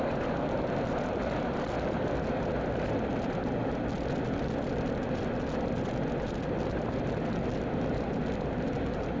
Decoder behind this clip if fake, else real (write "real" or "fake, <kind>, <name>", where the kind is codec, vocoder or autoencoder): real